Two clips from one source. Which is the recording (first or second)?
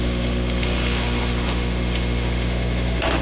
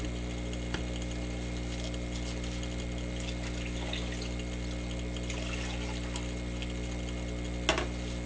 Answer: second